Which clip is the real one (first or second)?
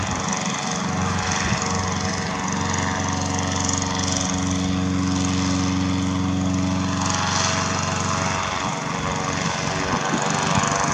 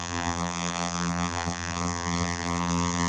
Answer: first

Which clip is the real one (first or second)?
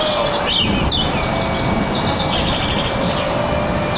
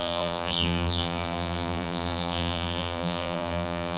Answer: first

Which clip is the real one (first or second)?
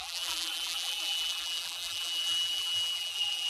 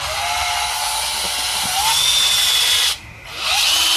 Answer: second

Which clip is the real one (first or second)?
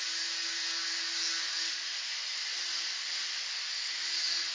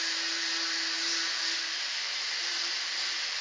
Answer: first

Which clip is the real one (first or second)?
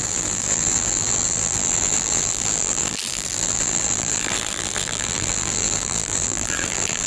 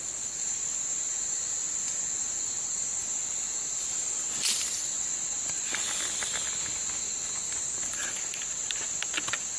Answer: second